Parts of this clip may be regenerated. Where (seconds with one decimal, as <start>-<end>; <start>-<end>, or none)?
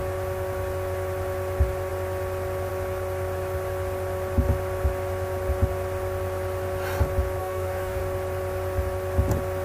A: 7.4-8.0